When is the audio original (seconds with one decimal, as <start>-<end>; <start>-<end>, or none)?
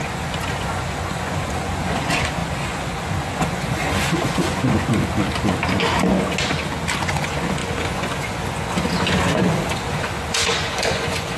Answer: 4.9-7.0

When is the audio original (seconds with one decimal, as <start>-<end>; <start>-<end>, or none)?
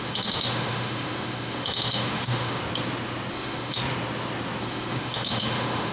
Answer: 2.6-3.3; 3.8-4.6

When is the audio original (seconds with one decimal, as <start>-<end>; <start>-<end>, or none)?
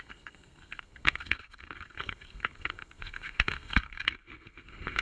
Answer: none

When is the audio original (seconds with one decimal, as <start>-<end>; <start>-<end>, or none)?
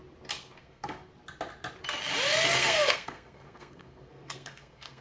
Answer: 0.0-0.6; 1.1-2.6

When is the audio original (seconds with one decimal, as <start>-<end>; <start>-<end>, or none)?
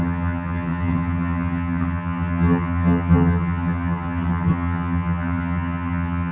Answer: none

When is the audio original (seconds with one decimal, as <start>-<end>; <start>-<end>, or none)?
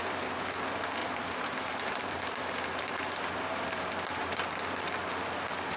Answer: 0.0-1.0; 4.5-5.8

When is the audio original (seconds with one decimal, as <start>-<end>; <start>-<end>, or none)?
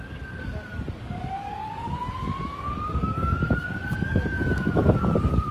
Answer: none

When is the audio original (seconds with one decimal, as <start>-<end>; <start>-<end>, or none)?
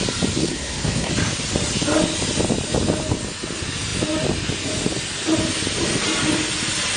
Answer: 0.0-0.4; 1.1-7.0